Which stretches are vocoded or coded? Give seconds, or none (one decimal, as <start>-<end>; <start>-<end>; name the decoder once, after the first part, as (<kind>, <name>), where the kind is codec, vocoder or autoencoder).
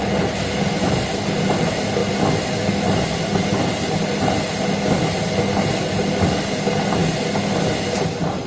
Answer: none